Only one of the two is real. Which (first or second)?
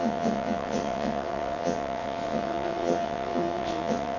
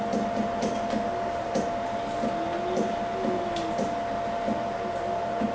second